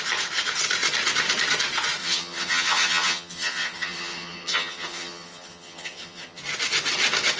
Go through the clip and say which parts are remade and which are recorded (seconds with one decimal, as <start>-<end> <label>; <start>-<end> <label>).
0.0-2.0 recorded; 2.0-6.4 remade; 6.4-7.4 recorded